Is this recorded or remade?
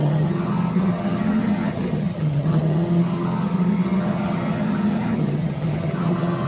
remade